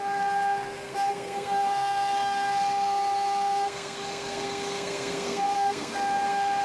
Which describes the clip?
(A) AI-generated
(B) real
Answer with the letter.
A